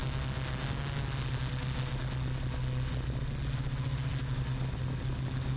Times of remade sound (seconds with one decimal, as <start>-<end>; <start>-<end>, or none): none